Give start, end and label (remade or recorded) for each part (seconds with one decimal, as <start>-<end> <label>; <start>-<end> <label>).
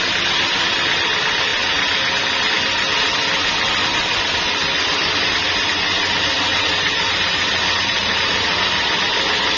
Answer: 0.0-6.5 recorded; 6.5-9.0 remade; 9.0-9.6 recorded